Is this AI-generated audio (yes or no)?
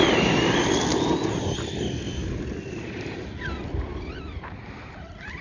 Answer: no